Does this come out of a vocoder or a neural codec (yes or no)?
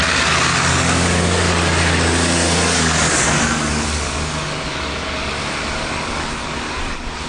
yes